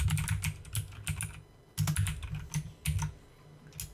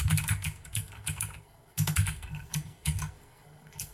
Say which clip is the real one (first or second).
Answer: first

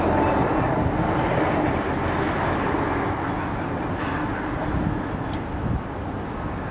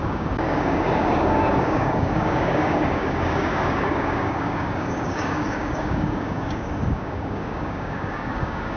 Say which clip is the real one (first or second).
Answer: first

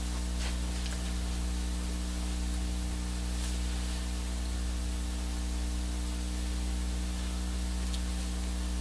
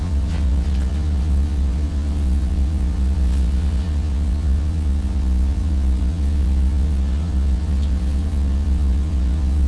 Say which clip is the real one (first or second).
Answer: first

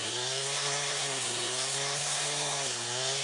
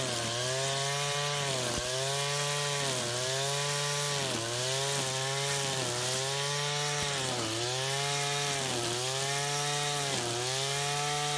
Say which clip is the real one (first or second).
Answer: second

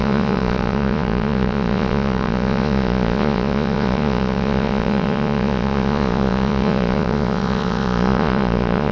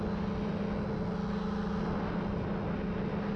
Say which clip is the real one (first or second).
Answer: second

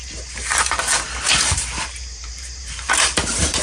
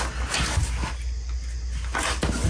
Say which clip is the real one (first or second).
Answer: second